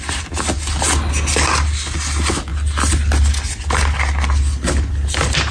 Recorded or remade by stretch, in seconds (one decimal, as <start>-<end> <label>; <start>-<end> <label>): 0.0-5.5 recorded